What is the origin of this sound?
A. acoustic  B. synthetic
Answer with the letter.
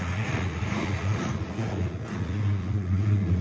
B